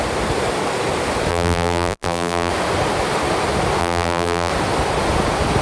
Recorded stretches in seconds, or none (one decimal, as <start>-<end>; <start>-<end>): 0.0-1.3; 2.5-3.8; 4.5-5.6